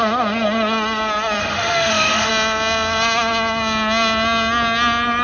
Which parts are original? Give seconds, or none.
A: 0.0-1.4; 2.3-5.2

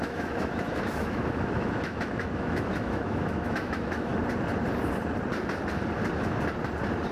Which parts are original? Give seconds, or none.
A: 4.1-7.1

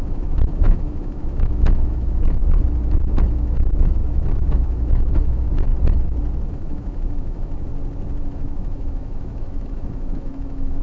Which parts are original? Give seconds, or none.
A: 2.4-3.3; 5.7-6.5; 7.7-8.3

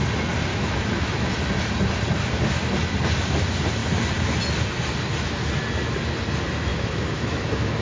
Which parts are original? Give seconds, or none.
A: 0.0-0.5; 1.3-6.7

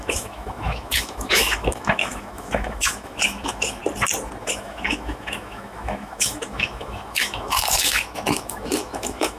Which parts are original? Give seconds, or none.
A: 3.8-4.4

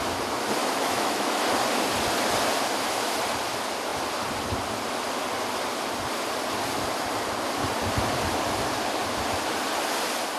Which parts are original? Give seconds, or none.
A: 0.0-0.6; 1.4-10.4

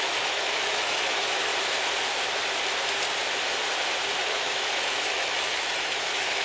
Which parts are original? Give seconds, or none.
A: 1.5-4.2